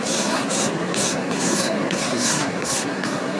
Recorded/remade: remade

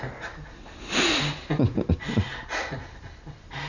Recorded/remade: recorded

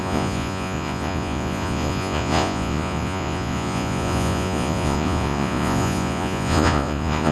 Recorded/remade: remade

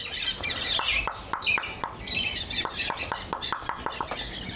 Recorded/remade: recorded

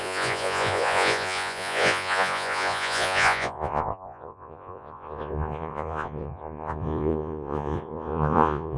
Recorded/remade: remade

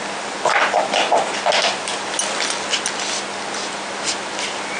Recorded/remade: recorded